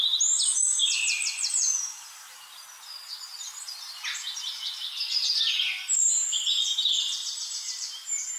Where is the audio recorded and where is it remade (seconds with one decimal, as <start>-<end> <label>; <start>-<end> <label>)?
0.0-7.3 recorded; 7.3-8.4 remade